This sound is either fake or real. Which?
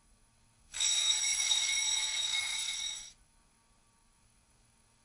fake